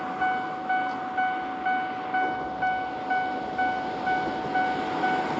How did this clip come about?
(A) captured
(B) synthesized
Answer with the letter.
A